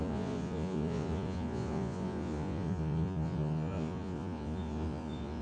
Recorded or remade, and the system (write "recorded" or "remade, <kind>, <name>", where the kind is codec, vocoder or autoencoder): remade, vocoder, Vocos